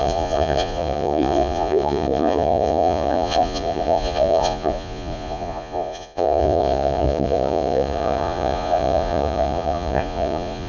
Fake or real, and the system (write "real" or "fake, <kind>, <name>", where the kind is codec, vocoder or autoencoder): fake, vocoder, Vocos